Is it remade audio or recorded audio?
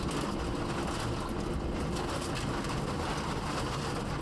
recorded